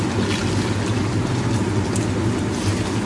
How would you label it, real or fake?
real